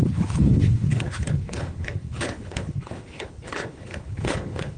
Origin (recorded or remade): remade